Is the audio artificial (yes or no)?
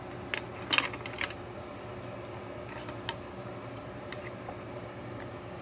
no